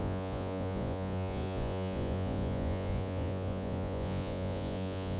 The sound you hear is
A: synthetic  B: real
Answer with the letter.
A